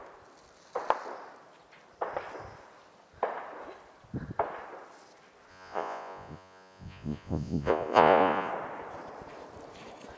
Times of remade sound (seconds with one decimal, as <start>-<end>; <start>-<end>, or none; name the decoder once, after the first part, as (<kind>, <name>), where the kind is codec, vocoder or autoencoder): 5.5-8.5 (vocoder, Vocos)